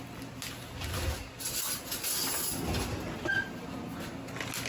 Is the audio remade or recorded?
recorded